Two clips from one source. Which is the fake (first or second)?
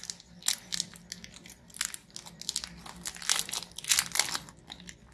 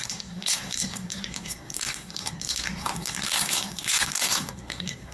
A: second